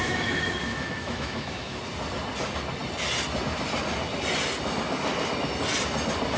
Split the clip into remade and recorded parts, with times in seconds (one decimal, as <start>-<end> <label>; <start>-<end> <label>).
0.0-1.8 remade; 1.8-6.4 recorded